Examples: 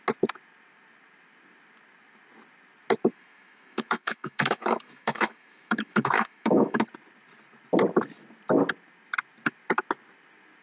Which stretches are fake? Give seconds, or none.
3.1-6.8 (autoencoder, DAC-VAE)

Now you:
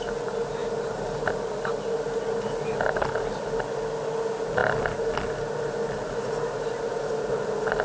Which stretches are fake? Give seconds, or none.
none